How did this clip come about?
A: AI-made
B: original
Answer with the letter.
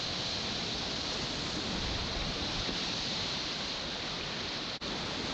B